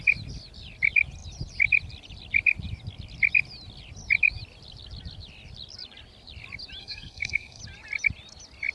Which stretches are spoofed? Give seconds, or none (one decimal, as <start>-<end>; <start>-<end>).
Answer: 6.8-7.6

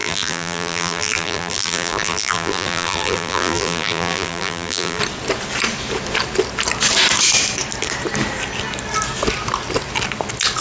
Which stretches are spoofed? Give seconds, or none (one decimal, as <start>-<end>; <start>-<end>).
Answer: 0.0-5.0

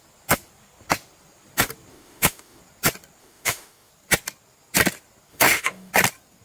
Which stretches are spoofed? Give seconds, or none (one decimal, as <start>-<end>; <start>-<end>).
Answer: 1.9-2.6; 3.2-3.9; 5.3-5.9